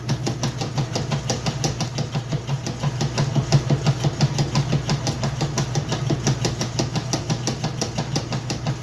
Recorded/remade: recorded